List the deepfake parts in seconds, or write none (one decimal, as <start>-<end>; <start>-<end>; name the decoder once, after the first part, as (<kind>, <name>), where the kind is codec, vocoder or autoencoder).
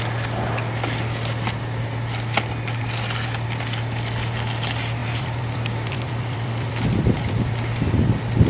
5.0-7.5 (vocoder, BigVGAN v2)